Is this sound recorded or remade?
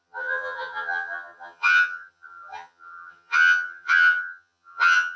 remade